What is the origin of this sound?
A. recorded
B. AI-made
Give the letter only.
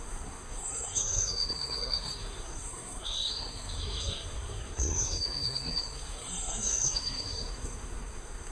B